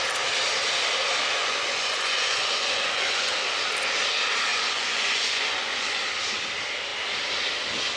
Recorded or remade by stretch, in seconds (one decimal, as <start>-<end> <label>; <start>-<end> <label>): 0.0-1.4 recorded; 1.4-3.3 remade; 3.3-4.5 recorded; 4.5-6.0 remade; 6.0-8.0 recorded

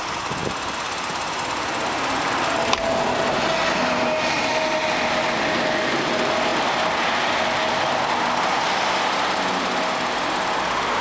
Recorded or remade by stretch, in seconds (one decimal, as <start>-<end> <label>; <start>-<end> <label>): 0.0-11.0 recorded

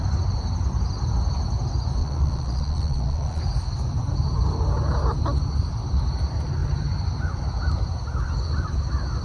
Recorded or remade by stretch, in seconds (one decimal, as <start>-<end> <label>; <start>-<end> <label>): 0.0-2.0 recorded; 2.0-3.4 remade; 3.4-9.2 recorded

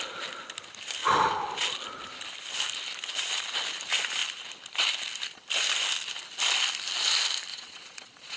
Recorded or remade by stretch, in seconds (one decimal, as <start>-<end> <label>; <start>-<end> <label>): 0.0-7.5 recorded; 7.5-8.4 remade

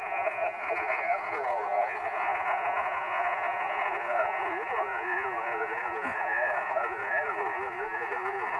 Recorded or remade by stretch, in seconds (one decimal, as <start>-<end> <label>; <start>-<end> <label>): 0.0-8.6 remade

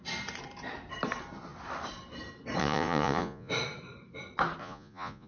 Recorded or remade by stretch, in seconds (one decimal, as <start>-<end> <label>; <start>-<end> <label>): 0.0-2.6 recorded; 2.6-3.5 remade; 3.5-4.6 recorded; 4.6-5.3 remade